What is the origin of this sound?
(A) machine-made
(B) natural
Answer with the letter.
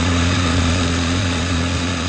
A